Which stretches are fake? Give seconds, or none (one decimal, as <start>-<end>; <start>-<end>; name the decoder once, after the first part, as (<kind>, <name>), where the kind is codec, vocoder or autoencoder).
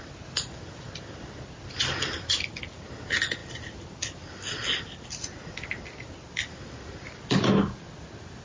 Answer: none